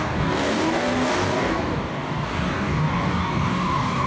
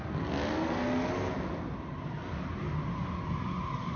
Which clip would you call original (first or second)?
second